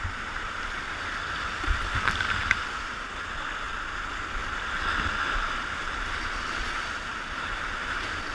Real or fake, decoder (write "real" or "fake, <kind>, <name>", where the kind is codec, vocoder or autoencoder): real